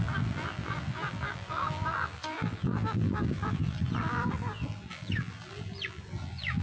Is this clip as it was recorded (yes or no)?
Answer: no